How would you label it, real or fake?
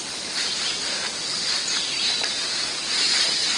real